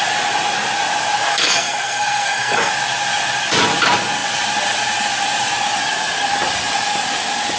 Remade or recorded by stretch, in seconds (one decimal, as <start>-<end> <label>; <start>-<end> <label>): 0.0-1.3 recorded; 1.3-2.7 remade; 2.7-7.6 recorded